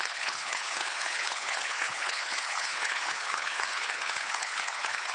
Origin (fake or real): fake